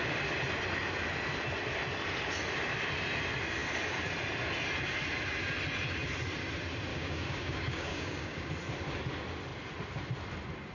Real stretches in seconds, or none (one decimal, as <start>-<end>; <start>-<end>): 0.0-6.9; 8.5-10.7